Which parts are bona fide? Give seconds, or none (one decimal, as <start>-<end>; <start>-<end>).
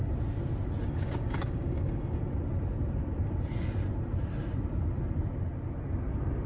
0.0-0.8; 2.2-6.5